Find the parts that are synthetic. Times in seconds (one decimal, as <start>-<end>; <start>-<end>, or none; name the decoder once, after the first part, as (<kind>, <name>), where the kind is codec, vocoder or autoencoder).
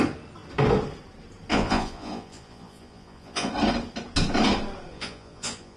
1.5-3.5 (vocoder, Vocos); 4.9-5.8